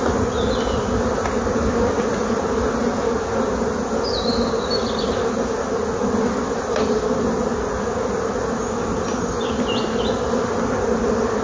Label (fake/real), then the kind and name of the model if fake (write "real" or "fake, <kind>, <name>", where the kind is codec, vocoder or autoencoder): real